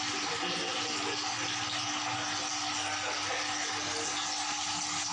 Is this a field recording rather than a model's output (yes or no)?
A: yes